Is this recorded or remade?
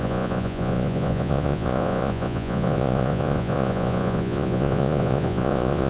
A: remade